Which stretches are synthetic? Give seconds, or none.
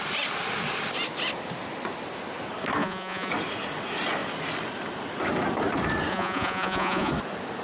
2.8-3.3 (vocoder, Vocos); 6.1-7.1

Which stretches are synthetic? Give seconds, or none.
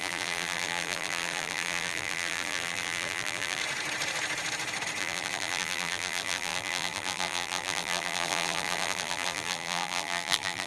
0.0-3.6 (vocoder, BigVGAN v2); 5.0-10.7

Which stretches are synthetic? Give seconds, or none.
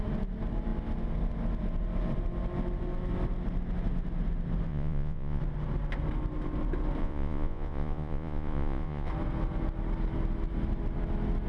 4.7-5.4 (vocoder, Vocos); 7.0-9.1